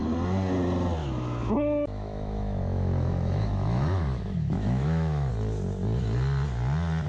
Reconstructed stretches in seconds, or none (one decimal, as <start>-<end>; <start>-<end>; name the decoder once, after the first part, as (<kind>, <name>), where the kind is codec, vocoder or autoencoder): 1.0-5.3 (autoencoder, DAC-VAE)